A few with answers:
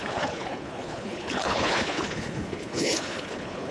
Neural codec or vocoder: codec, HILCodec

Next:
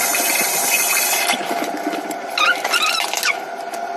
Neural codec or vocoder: none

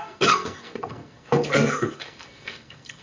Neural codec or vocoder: codec, SNAC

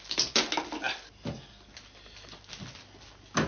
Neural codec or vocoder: none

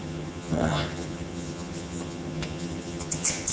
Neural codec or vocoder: vocoder, HiFi-GAN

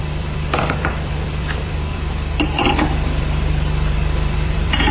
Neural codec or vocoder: vocoder, BigVGAN v2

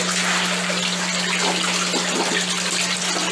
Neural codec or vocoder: none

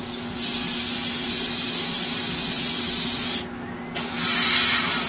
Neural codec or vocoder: none